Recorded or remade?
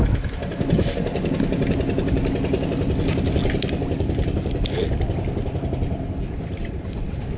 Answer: recorded